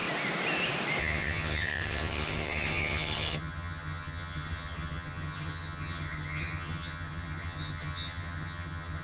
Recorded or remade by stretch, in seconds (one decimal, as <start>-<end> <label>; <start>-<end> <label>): 0.0-1.0 recorded; 1.0-9.0 remade